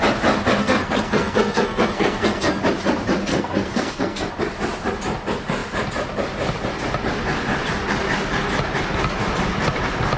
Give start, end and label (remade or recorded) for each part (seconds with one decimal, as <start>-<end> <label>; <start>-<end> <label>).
0.0-0.6 recorded; 0.6-2.6 remade; 2.6-3.3 recorded; 3.3-4.3 remade; 4.3-10.2 recorded